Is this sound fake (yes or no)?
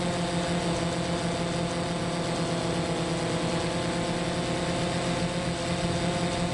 no